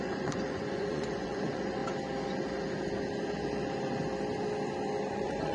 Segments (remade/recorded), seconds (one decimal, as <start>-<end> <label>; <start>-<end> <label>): 0.0-1.8 remade; 1.8-5.1 recorded; 5.1-5.5 remade